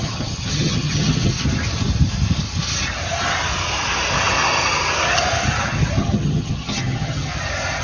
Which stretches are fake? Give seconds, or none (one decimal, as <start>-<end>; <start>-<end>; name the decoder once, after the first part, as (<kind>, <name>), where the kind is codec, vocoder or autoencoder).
0.0-1.3 (vocoder, HiFi-GAN); 6.0-7.3